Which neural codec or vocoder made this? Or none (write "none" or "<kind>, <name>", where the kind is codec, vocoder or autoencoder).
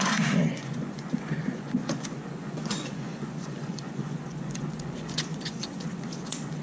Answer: vocoder, Vocos